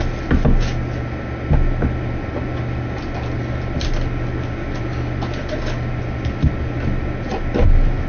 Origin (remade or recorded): recorded